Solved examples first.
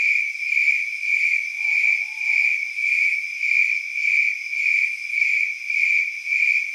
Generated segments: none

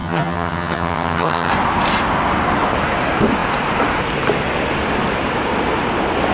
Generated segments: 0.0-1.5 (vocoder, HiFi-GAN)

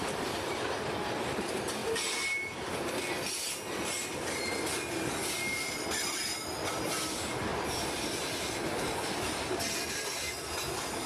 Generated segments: none

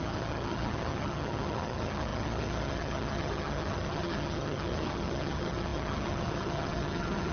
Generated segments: 0.0-7.3 (vocoder, HiFi-GAN)

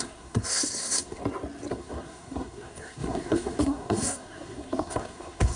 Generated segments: 0.0-1.2 (codec, SNAC); 1.7-5.6